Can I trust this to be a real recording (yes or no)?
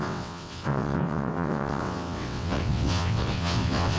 no